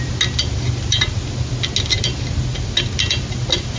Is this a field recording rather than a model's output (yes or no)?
yes